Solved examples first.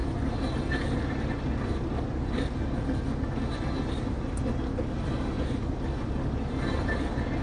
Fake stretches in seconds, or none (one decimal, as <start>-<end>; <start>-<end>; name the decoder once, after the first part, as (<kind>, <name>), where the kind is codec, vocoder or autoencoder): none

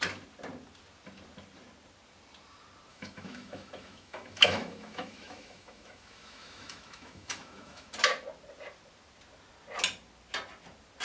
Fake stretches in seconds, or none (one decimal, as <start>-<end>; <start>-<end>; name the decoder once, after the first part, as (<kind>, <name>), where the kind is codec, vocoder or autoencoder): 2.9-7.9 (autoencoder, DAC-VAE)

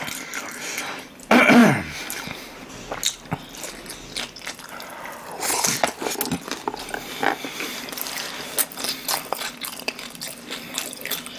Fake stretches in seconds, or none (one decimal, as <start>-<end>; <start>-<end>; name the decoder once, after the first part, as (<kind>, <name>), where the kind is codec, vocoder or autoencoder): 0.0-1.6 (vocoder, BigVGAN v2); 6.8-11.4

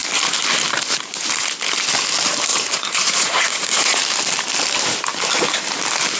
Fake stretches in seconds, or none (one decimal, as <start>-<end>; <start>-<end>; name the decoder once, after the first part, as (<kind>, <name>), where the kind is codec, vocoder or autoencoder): 2.5-4.0 (vocoder, Vocos)

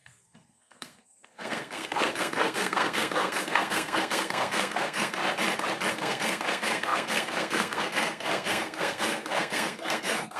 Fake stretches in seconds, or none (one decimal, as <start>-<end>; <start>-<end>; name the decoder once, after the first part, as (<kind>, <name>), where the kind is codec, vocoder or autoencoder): 0.0-5.2 (codec, SNAC); 5.9-10.4

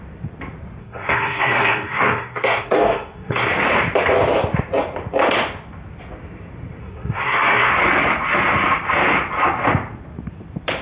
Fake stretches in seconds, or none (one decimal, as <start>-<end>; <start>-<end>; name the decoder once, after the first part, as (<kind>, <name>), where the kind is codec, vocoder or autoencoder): 0.8-3.5 (codec, SNAC); 6.8-7.7

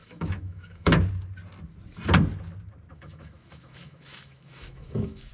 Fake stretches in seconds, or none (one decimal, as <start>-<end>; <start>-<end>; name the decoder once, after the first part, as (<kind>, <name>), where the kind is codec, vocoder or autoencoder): 0.0-0.9 (autoencoder, DAC-VAE); 2.9-5.3

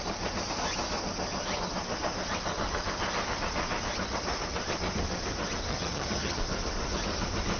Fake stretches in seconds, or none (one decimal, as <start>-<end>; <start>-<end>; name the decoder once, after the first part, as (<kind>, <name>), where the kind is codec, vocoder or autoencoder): 5.7-6.4 (vocoder, HiFi-GAN)